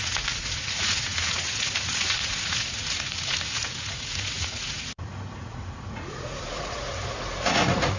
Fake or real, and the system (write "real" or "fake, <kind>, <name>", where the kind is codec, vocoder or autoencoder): fake, vocoder, Vocos